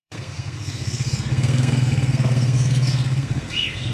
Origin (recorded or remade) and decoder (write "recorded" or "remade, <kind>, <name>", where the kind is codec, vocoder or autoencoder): remade, codec, SNAC